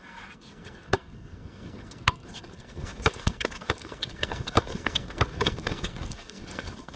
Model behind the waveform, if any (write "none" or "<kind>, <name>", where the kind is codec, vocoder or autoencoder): codec, SNAC